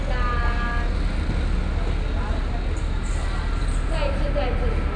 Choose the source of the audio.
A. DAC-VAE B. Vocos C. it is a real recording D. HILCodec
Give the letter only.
C